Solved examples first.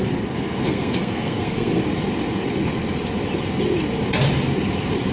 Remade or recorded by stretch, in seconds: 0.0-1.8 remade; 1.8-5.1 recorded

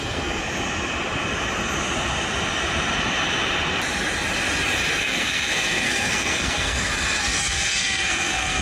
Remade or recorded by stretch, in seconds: 0.0-0.4 remade; 0.4-4.9 recorded; 4.9-8.6 remade

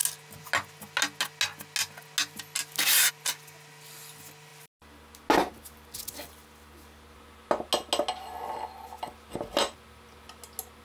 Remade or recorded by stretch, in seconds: 0.0-10.8 recorded

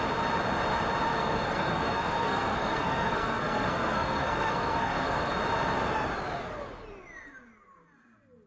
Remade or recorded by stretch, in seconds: 0.0-1.1 recorded; 1.1-5.3 remade; 5.3-8.5 recorded